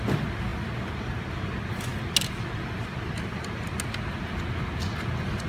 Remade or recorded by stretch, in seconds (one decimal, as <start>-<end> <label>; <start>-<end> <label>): 0.0-5.5 recorded